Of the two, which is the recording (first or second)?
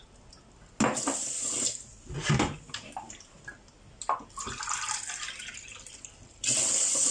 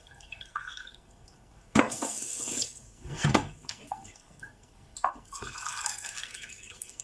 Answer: first